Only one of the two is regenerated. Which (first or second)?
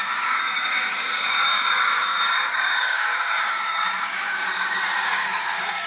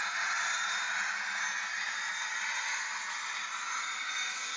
first